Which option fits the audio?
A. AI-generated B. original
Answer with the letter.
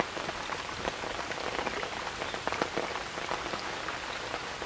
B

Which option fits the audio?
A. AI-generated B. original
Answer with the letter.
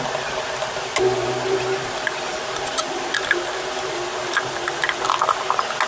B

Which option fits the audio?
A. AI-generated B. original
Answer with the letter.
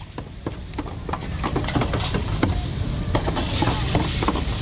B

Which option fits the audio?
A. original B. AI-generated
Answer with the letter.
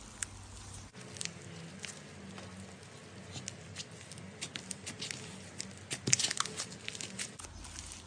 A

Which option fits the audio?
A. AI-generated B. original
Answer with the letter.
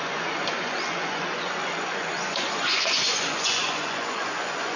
A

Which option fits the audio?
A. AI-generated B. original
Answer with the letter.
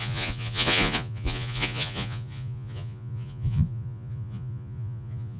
A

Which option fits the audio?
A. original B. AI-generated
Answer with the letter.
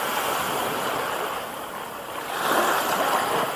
A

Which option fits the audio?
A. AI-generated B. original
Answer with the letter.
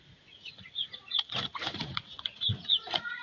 A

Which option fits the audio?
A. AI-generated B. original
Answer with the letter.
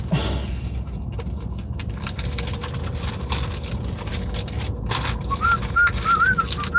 B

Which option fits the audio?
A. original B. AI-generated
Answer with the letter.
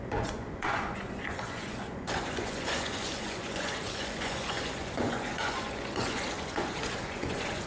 B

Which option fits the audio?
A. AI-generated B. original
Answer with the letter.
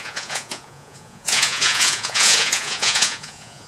A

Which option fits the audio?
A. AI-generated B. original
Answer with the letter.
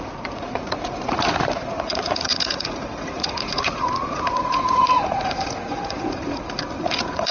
A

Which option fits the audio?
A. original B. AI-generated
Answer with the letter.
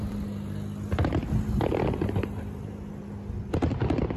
A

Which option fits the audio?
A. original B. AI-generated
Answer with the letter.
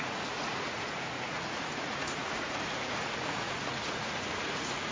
B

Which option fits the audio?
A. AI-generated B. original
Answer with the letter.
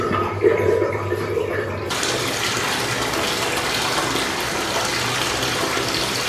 B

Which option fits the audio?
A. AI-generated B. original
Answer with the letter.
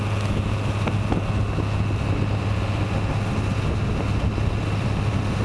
B